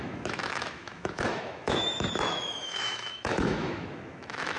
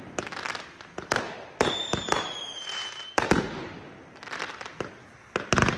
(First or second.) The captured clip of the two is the second